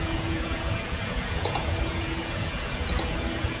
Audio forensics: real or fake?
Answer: fake